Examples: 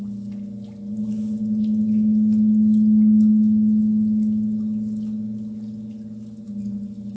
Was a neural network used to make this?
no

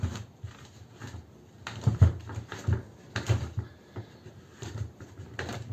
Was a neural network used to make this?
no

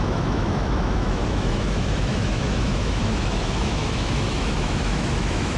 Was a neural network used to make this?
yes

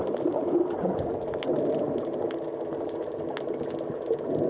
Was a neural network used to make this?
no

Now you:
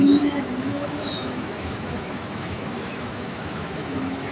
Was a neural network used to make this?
yes